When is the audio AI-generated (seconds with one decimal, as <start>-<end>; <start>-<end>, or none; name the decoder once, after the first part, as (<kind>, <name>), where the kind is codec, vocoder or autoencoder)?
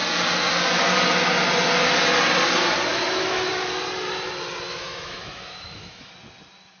2.9-3.5 (autoencoder, DAC-VAE); 4.7-6.1